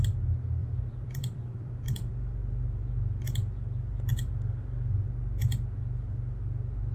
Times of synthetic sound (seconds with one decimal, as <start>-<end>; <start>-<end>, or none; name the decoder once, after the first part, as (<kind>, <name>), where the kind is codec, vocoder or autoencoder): 0.6-2.1 (vocoder, BigVGAN v2)